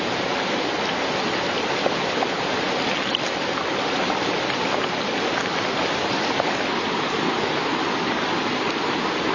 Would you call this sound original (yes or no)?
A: yes